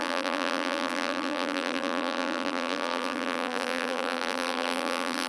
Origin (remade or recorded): remade